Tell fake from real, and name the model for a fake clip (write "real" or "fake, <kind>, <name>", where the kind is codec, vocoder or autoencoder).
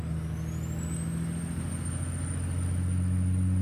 real